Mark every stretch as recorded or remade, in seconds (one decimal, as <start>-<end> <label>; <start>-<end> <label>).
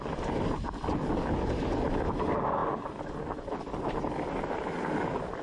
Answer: 0.0-5.4 recorded